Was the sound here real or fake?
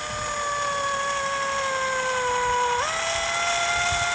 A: real